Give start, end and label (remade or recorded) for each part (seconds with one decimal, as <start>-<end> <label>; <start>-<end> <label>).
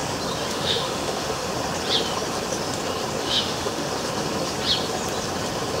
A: 0.0-0.5 recorded; 0.5-1.5 remade; 1.5-3.2 recorded; 3.2-3.9 remade; 3.9-5.8 recorded